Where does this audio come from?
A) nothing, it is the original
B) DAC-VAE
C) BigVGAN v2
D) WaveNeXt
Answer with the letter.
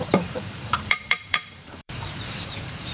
C